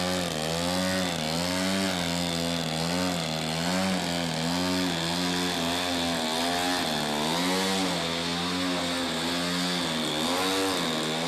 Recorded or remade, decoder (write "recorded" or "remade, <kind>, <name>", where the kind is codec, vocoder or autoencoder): recorded